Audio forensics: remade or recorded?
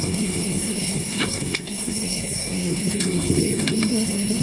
remade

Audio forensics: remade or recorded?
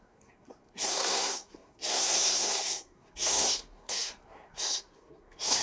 remade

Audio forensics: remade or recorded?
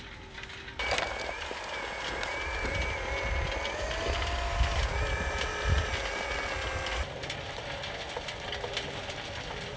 recorded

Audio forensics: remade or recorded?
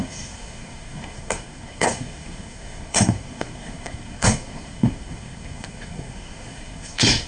remade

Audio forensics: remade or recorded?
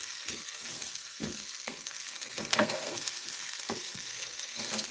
remade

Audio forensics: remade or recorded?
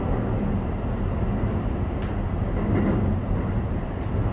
recorded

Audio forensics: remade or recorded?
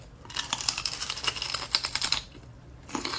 recorded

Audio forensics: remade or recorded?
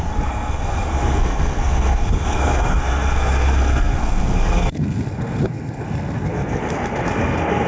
remade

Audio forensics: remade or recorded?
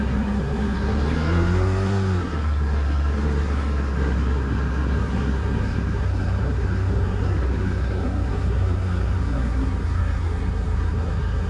remade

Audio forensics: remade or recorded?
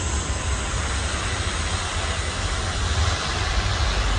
recorded